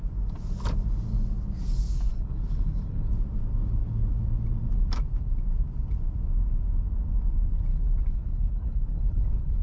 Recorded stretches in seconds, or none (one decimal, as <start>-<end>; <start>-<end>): 0.0-2.1; 3.1-7.7

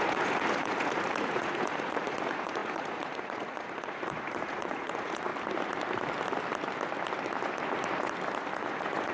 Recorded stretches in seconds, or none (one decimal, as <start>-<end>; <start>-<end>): 5.3-8.5